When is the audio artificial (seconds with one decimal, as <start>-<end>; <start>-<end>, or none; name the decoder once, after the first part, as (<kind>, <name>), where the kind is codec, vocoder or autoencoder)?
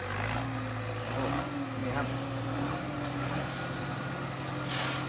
1.8-4.1 (vocoder, BigVGAN v2)